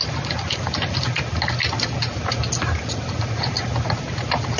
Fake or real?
real